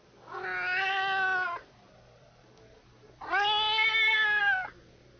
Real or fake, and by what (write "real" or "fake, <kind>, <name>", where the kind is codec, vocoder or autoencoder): real